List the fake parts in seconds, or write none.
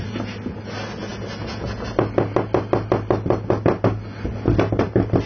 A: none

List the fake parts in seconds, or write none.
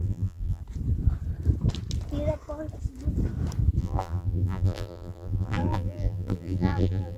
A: 0.0-0.6 (vocoder, BigVGAN v2); 3.8-7.2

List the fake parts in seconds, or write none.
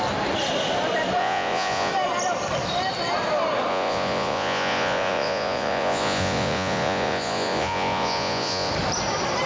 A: 1.2-1.9 (vocoder, Vocos); 3.7-8.7